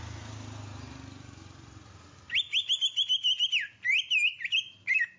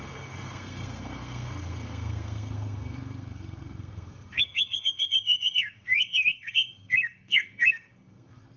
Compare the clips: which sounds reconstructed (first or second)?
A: second